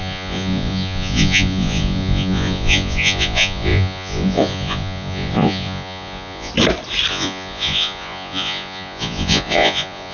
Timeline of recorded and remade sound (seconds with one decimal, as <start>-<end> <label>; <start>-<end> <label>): 0.0-6.5 remade; 6.5-7.1 recorded; 7.1-10.1 remade